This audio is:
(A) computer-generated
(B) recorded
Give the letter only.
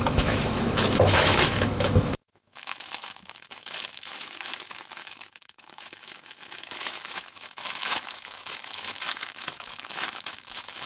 A